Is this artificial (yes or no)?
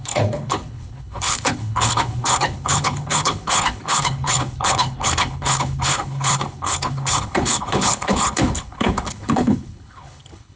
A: yes